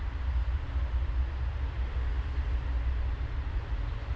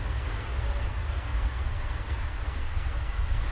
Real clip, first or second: first